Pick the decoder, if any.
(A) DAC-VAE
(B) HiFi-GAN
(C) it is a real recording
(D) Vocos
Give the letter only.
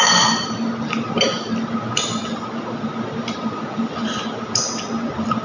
C